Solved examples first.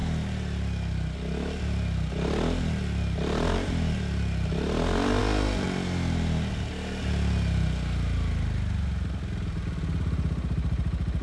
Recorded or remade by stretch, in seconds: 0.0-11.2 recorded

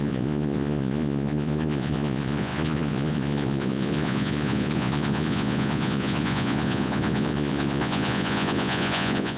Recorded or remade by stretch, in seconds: 0.0-9.4 remade

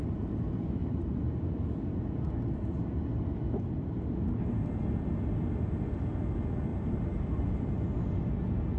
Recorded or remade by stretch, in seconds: 0.0-0.8 recorded; 0.8-1.9 remade; 1.9-6.7 recorded; 6.7-7.6 remade; 7.6-8.8 recorded

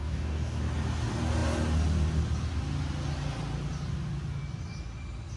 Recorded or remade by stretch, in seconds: 0.0-0.6 remade; 0.6-5.4 recorded

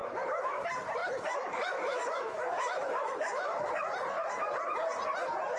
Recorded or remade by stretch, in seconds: 0.0-0.6 remade; 0.6-1.0 recorded; 1.0-3.7 remade; 3.7-5.6 recorded

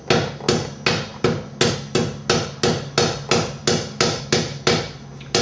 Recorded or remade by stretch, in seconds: 0.0-5.4 recorded

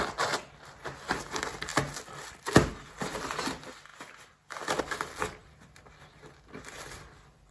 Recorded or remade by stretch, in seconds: 0.0-7.5 recorded